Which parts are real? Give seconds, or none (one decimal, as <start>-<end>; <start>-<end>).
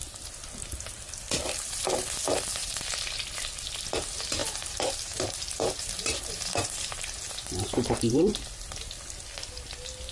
0.0-2.5; 3.0-4.4; 8.4-10.1